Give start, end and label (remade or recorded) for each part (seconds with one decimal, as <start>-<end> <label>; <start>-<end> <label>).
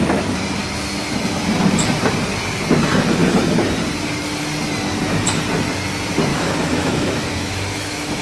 0.0-6.3 recorded; 6.3-8.2 remade